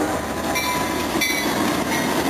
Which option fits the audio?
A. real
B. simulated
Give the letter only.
A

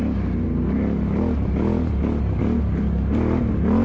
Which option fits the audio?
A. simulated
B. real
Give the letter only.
B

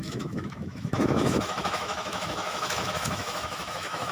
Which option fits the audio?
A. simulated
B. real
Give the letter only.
A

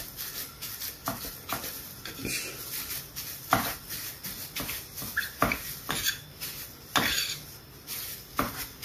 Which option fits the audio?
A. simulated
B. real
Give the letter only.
B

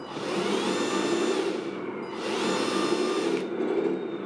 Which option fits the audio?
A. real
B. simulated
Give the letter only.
A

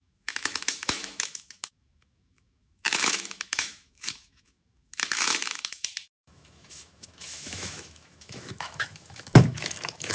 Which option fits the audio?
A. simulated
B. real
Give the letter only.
A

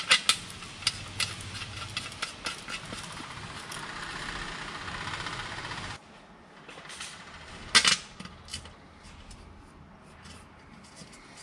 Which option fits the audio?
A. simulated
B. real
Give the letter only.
B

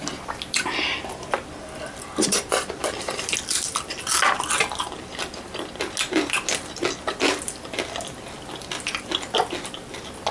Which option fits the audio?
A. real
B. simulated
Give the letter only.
A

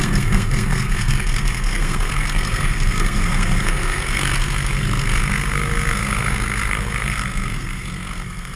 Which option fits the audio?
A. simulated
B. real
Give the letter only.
A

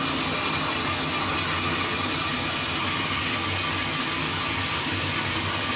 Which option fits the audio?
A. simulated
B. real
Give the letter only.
B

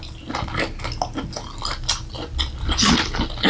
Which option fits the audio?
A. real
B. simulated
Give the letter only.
A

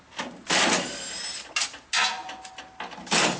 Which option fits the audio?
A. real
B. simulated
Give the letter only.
A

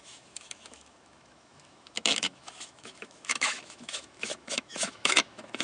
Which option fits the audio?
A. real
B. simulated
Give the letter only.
B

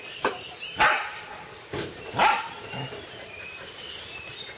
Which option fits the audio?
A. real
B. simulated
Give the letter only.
A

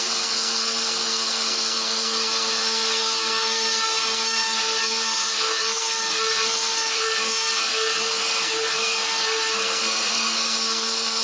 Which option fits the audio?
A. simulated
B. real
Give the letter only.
A